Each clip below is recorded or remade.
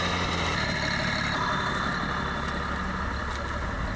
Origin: recorded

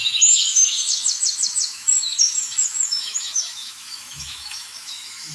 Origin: remade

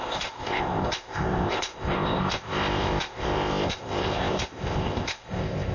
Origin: remade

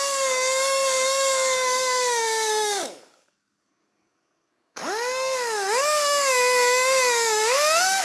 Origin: remade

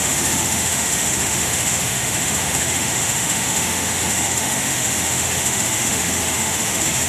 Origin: remade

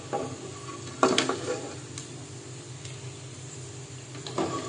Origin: recorded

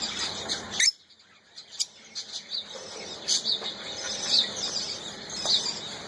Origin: recorded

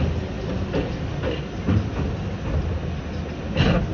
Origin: recorded